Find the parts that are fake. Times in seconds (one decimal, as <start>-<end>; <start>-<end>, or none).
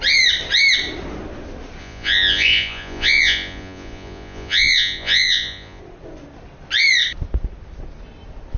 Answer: 1.8-5.8